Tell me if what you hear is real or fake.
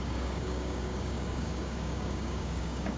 fake